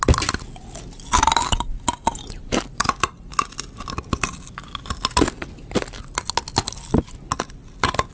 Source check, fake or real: real